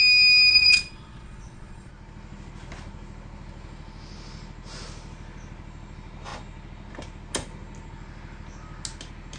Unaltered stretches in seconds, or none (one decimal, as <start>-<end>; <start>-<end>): 0.0-0.5; 1.9-9.4